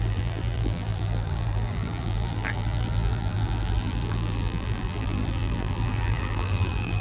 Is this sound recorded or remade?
remade